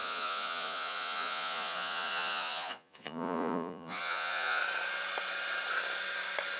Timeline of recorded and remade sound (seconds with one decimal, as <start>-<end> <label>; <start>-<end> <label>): 0.0-4.6 remade; 4.6-6.6 recorded